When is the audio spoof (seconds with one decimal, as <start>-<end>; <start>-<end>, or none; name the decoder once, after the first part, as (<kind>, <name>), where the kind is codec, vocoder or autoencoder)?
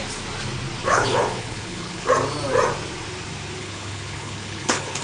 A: 0.8-2.1 (codec, HILCodec); 3.6-5.0